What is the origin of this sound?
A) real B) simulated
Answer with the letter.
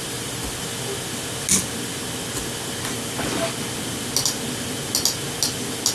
A